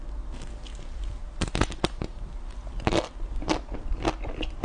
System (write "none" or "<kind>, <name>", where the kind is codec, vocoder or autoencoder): none